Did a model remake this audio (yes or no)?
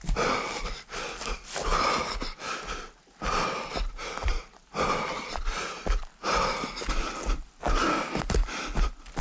no